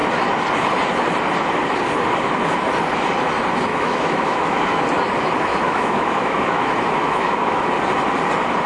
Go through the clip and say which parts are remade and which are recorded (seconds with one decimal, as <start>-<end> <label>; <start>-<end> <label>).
0.0-3.7 recorded; 3.7-4.8 remade; 4.8-5.5 recorded; 5.5-7.7 remade; 7.7-8.7 recorded